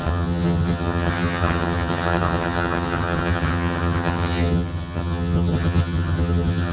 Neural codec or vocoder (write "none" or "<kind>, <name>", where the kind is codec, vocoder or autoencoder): vocoder, HiFi-GAN